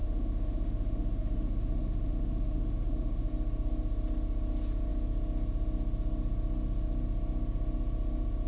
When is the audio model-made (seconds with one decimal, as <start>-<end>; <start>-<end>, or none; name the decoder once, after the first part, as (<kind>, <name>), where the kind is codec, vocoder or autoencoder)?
0.0-3.3 (autoencoder, DAC-VAE)